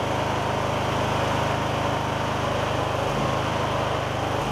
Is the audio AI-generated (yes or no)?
no